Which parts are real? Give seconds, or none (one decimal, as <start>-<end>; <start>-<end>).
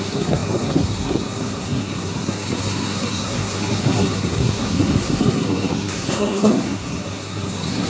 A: none